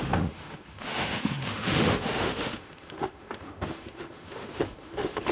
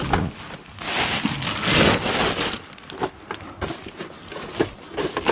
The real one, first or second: second